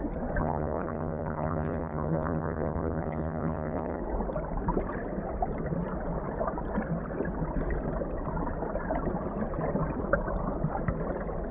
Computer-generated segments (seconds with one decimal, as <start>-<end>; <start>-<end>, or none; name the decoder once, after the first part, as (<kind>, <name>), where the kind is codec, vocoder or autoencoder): 0.4-4.0 (vocoder, HiFi-GAN)